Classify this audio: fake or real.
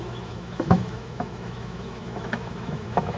fake